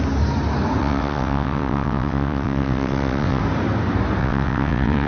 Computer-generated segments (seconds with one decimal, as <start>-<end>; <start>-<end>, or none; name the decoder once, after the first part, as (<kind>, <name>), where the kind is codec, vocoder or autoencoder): 0.8-3.4 (vocoder, WaveNeXt); 4.2-5.1